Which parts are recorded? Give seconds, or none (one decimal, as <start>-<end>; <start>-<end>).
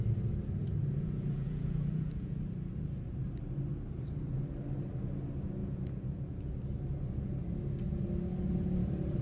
0.0-0.8; 2.4-5.6; 6.5-9.2